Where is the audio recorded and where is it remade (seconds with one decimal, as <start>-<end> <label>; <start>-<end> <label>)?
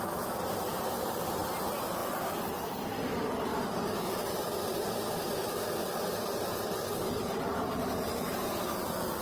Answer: 0.0-9.2 recorded